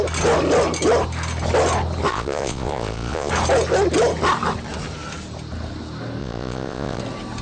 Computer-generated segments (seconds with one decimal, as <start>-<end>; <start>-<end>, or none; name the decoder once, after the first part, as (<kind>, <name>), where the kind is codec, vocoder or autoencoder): 2.1-3.3 (vocoder, Vocos); 6.2-7.0